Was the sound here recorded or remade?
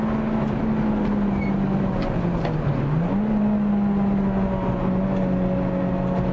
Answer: recorded